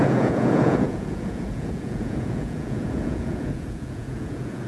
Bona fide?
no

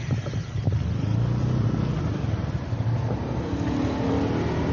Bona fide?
yes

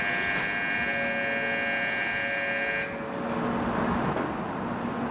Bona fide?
yes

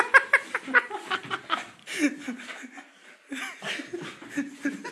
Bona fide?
yes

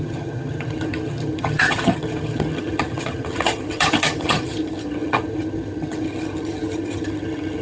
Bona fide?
no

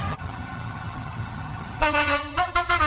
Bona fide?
no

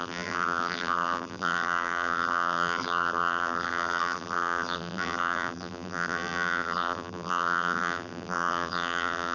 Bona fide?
no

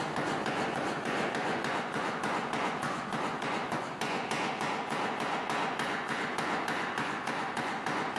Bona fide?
no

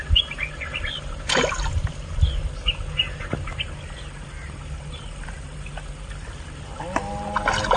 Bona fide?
yes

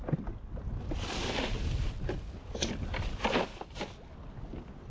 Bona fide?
yes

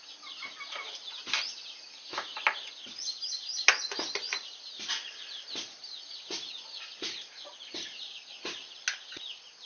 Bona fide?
yes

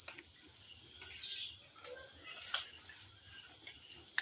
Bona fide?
yes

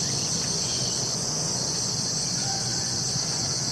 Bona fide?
no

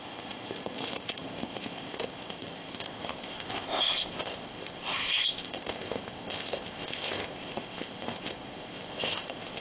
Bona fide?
no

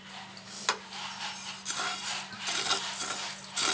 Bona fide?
yes